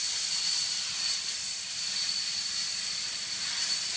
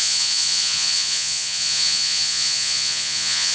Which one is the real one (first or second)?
first